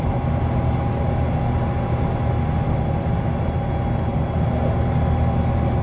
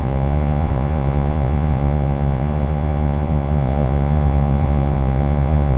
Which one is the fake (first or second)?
second